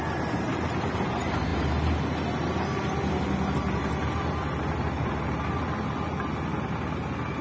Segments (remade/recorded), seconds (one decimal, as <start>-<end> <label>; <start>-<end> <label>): 0.0-7.4 recorded